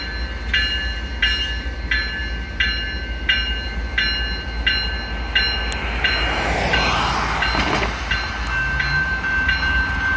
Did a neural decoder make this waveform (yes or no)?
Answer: no